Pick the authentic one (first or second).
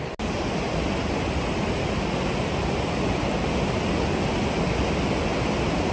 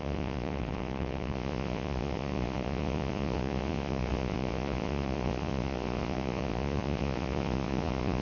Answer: first